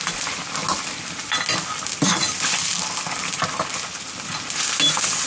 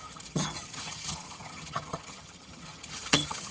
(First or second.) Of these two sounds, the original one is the first